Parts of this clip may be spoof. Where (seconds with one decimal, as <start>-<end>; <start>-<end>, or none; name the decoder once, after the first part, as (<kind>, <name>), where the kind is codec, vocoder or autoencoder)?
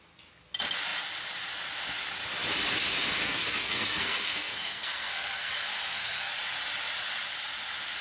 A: 3.2-6.3 (codec, SNAC)